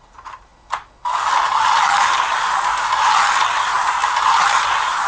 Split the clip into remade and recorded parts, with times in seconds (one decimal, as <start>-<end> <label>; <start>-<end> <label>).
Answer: 0.0-0.5 remade; 0.5-3.6 recorded; 3.6-5.1 remade